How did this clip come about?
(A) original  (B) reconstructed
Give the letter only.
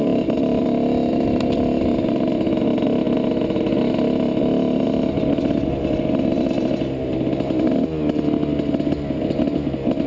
A